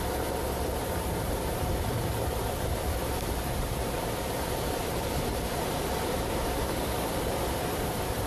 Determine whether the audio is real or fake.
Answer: fake